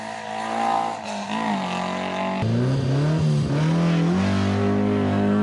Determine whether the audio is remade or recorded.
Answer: recorded